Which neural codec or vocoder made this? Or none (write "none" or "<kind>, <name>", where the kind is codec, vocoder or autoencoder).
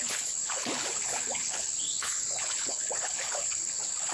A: codec, HILCodec